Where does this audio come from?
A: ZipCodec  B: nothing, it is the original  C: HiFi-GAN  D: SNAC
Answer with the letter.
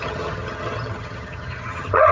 C